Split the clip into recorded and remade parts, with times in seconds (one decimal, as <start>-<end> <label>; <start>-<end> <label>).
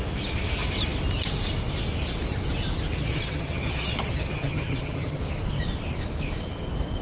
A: 0.0-3.0 recorded; 3.0-5.2 remade; 5.2-7.0 recorded